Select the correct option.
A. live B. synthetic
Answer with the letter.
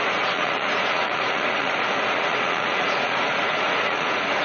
B